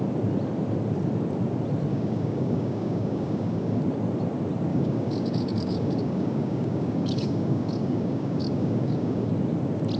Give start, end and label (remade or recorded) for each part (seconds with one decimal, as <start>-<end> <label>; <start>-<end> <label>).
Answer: 0.0-1.9 recorded; 1.9-3.8 remade; 3.8-4.7 recorded; 4.7-9.3 remade; 9.3-10.0 recorded